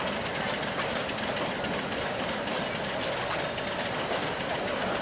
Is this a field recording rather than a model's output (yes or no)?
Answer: yes